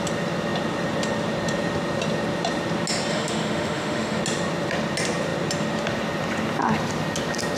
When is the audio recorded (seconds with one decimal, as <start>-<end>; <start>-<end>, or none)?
0.0-3.1; 4.2-7.6